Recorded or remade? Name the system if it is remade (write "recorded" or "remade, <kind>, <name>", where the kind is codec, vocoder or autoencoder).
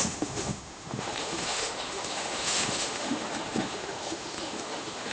remade, autoencoder, DAC-VAE